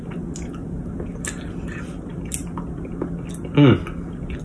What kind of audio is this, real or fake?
real